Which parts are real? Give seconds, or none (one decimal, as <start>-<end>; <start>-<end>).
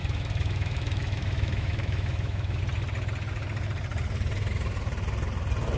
2.6-5.8